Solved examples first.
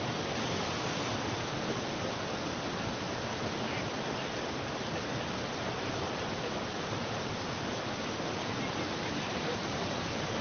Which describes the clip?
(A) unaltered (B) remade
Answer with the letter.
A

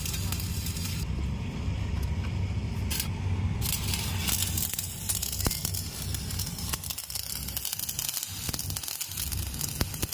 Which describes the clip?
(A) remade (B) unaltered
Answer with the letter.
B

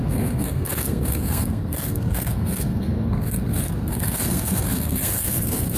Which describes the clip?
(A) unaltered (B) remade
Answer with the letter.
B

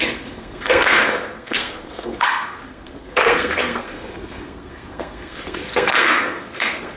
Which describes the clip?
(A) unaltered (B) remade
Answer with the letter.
B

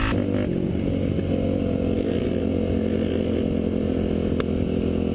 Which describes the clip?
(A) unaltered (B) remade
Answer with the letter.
A